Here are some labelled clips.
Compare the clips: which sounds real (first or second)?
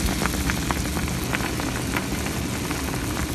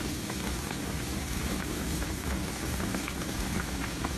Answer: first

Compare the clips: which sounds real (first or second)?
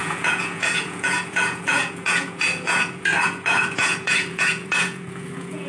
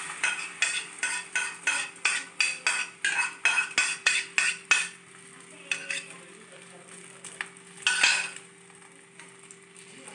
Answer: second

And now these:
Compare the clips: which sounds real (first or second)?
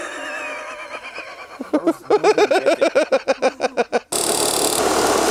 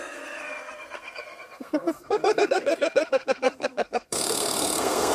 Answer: first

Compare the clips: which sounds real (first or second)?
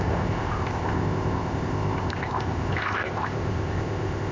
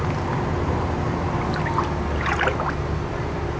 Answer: second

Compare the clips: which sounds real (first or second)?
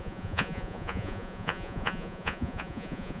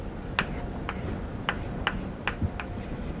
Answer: second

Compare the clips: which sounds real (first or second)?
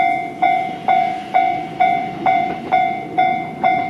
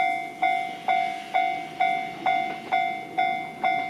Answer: second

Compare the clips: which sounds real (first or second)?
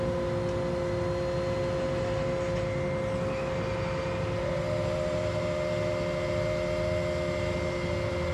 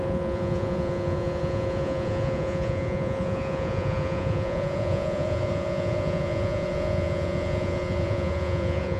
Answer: first